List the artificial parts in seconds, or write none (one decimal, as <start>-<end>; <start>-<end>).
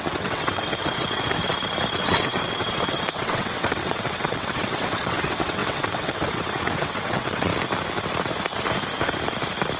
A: 0.0-1.4; 2.0-7.5